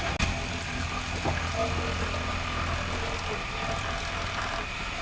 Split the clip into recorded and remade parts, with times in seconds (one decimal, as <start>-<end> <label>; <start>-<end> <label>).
0.0-5.0 recorded